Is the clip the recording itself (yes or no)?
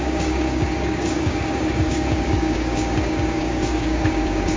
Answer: no